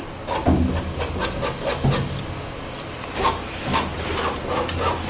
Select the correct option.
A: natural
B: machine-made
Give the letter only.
A